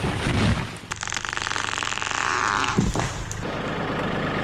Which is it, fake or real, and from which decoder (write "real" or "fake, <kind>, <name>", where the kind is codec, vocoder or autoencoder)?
real